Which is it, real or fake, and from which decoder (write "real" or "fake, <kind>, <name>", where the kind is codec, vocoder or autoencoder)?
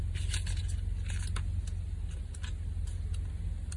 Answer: real